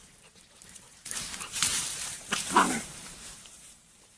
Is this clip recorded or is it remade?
remade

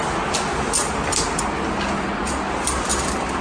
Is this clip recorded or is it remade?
recorded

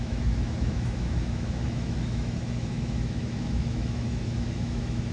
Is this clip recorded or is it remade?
remade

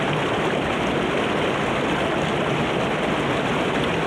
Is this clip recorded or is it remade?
recorded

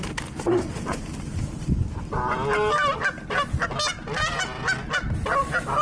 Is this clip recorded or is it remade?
recorded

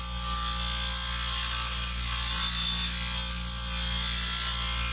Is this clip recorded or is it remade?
recorded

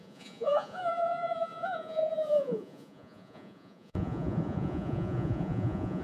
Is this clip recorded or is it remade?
remade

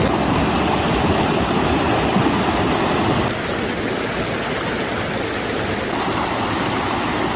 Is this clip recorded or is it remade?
recorded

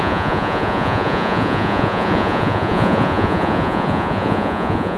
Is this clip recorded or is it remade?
remade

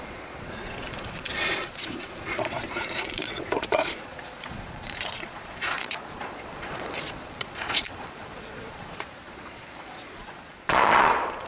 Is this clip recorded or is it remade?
remade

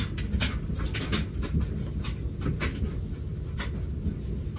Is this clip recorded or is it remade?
recorded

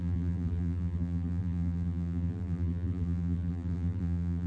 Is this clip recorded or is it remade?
remade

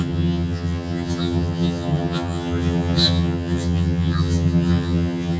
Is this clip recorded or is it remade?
remade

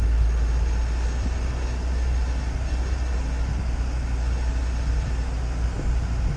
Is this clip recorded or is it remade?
recorded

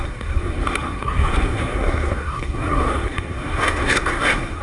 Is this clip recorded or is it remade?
remade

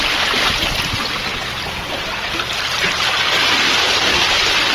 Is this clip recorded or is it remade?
recorded